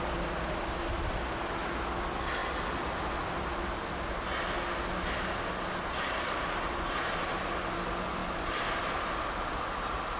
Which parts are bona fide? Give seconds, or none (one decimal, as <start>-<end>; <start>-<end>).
0.0-5.9; 7.1-10.2